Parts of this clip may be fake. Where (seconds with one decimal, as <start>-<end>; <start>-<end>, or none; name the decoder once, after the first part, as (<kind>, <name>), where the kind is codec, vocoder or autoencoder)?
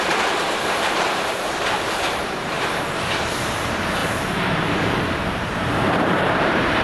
0.0-6.8 (vocoder, BigVGAN v2)